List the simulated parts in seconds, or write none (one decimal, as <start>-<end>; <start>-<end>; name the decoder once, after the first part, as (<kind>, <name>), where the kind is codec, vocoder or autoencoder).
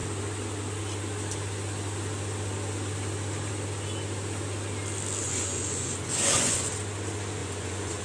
5.2-6.7 (vocoder, Vocos); 7.4-8.0